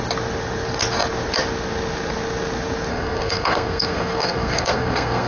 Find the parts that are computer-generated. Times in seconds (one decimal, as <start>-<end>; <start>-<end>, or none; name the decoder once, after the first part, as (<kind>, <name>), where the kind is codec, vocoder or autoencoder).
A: 2.9-5.3 (codec, SNAC)